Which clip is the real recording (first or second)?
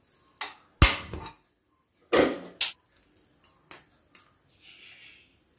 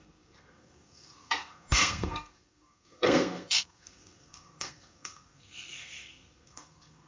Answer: first